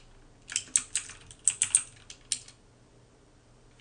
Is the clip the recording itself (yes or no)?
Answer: yes